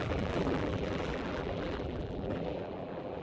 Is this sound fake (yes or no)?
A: yes